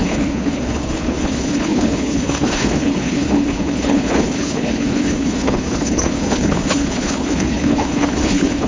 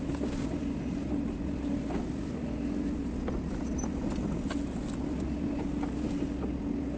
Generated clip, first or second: first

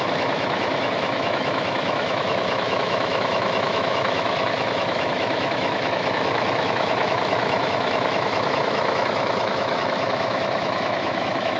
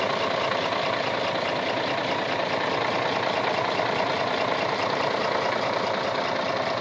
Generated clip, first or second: first